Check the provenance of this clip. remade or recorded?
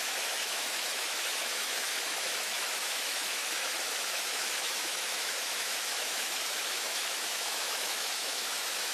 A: remade